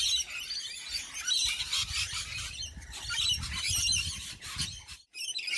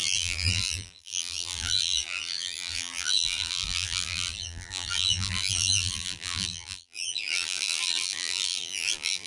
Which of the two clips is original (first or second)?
first